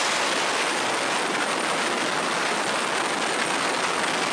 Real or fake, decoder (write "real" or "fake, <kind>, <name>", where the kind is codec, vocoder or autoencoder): real